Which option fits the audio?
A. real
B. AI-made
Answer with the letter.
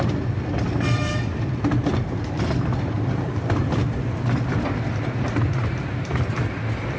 A